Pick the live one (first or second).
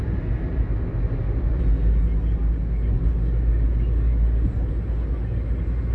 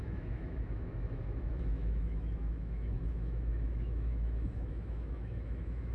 first